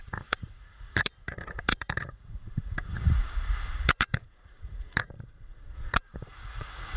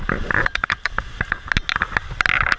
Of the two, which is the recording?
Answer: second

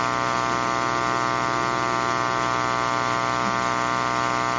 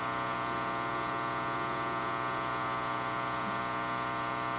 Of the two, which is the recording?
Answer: first